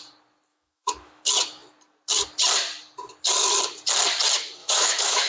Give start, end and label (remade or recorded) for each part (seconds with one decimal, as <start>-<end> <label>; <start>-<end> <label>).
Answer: 0.0-0.5 recorded; 0.5-1.2 remade; 1.2-4.6 recorded; 4.6-5.3 remade